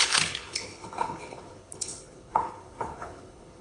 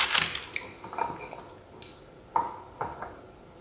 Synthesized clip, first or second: first